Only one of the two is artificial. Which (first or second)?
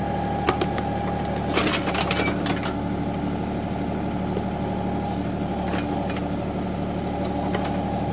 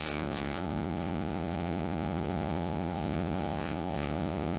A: second